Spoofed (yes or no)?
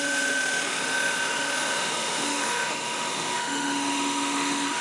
yes